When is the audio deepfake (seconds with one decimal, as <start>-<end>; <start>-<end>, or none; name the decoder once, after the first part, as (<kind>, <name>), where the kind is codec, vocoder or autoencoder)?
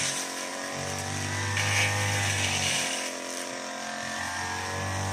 none